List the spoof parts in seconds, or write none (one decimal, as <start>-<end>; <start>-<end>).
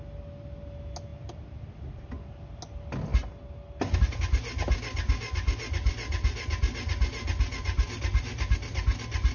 none